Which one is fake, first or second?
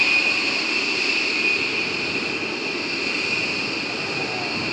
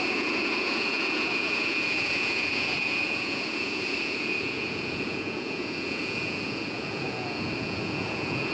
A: second